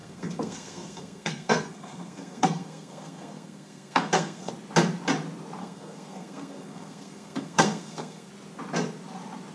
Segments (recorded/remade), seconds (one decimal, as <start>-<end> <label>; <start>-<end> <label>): 0.0-4.5 remade; 4.5-5.6 recorded; 5.6-8.3 remade; 8.3-9.5 recorded